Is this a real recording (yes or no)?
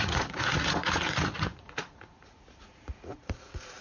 no